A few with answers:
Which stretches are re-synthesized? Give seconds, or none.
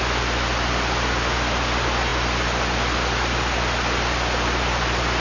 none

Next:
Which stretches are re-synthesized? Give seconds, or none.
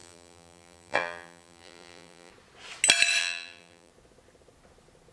0.0-2.3; 3.2-3.9